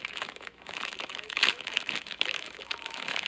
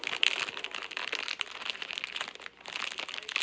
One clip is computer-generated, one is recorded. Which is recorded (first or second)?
second